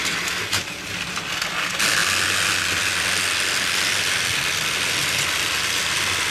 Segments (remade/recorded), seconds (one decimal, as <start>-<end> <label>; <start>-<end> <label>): 0.0-6.3 recorded